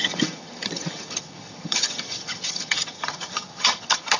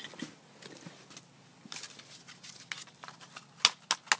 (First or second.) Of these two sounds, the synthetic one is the first